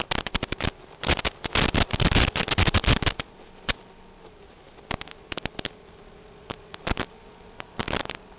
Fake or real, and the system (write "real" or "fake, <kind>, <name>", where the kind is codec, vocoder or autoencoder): real